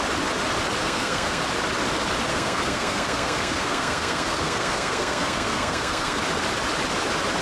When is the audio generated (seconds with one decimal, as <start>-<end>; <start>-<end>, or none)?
0.8-1.4; 2.3-6.2